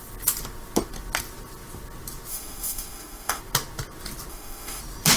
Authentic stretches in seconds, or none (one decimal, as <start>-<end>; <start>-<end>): 0.0-2.3; 3.4-4.3; 4.8-5.2